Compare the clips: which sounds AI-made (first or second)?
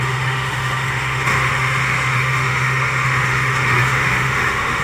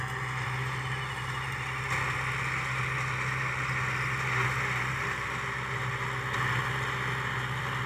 first